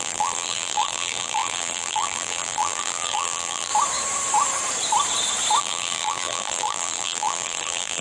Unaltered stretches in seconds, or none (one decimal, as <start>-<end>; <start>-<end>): 3.7-5.6